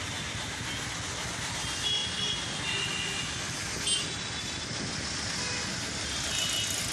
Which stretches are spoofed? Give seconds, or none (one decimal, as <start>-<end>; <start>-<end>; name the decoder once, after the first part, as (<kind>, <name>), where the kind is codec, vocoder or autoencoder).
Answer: none

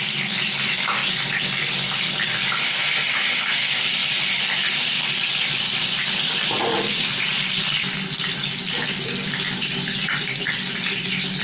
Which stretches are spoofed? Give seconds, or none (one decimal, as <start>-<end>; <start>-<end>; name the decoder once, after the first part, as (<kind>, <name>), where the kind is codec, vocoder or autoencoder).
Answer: 0.0-1.0 (vocoder, BigVGAN v2); 3.3-4.0; 5.4-11.4

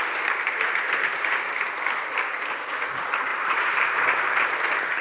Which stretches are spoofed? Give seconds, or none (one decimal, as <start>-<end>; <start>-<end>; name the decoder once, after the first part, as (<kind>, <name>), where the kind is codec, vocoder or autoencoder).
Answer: 1.1-1.6 (vocoder, BigVGAN v2); 3.3-4.0

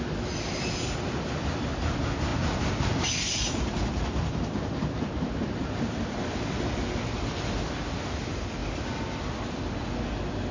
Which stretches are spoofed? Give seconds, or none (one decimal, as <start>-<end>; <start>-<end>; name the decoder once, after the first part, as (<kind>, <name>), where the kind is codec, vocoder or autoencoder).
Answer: 2.3-6.7 (vocoder, BigVGAN v2)

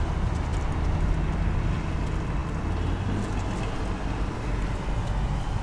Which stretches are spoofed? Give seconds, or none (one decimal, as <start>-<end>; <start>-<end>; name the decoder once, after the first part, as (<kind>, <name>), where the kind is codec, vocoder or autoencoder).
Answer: none

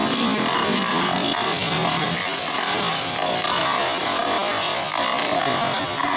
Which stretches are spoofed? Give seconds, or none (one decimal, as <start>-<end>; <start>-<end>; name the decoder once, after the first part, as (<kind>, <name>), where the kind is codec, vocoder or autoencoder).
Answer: 0.0-4.5 (vocoder, BigVGAN v2); 5.7-6.2